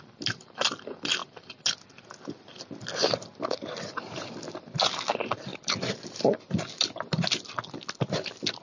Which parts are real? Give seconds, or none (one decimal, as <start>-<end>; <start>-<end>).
0.0-5.5; 6.2-8.6